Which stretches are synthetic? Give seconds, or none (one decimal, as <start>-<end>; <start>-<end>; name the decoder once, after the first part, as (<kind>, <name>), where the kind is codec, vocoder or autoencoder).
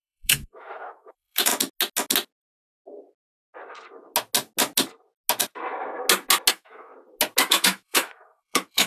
0.0-1.5 (autoencoder, DAC-VAE); 6.5-6.9; 7.5-8.9